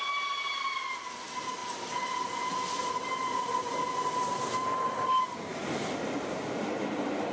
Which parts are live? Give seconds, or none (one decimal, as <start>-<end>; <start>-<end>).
0.0-7.3